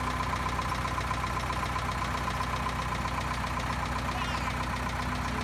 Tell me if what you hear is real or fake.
real